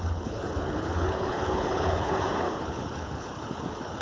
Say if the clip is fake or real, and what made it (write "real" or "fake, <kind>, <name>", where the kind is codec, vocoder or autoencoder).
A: fake, codec, HILCodec